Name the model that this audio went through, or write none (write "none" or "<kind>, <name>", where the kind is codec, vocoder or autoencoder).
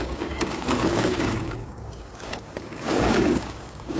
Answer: codec, DAC